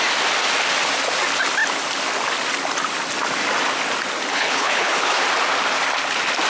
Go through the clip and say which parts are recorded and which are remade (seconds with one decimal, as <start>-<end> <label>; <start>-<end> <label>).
0.0-4.3 recorded; 4.3-5.2 remade; 5.2-6.5 recorded